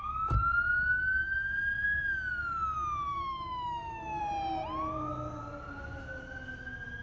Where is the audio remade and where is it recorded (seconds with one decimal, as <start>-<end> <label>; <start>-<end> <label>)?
0.0-3.1 recorded; 3.1-4.2 remade; 4.2-7.0 recorded